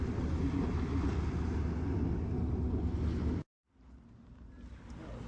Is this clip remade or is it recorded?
recorded